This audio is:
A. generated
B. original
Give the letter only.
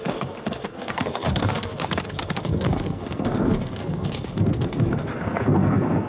A